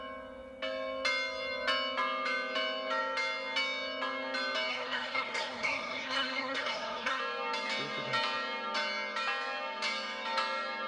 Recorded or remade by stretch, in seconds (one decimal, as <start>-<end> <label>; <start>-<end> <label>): 0.0-4.7 recorded; 4.7-7.2 remade; 7.2-10.9 recorded